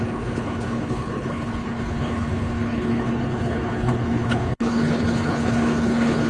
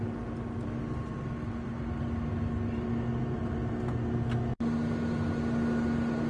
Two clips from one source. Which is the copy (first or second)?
first